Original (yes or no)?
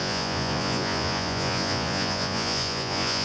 no